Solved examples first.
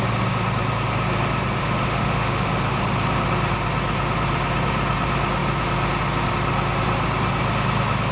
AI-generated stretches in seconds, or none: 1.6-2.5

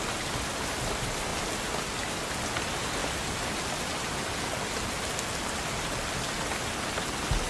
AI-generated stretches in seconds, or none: none

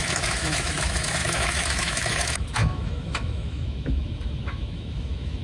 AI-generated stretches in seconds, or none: 0.0-5.4

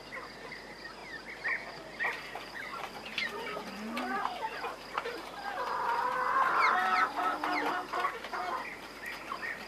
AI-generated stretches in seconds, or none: 2.7-6.0; 8.7-9.7

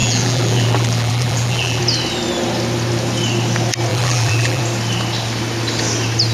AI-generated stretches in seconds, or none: 0.0-1.8; 3.9-4.6

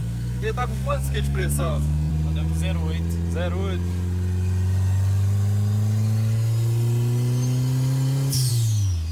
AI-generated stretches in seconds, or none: 0.0-2.1